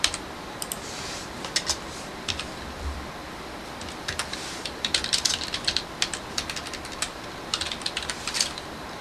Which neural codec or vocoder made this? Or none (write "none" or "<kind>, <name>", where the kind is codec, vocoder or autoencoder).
vocoder, BigVGAN v2